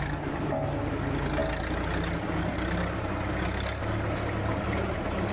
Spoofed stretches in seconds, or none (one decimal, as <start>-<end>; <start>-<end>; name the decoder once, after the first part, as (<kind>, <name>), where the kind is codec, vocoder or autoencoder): none